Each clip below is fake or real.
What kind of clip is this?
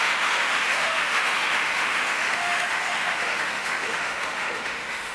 fake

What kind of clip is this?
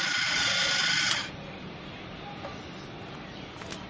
real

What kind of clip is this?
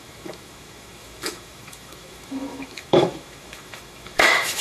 fake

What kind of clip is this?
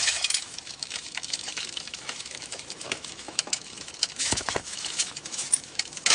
fake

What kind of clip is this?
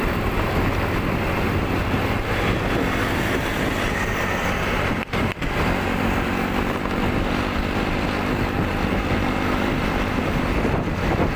real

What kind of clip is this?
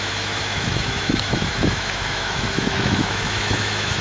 fake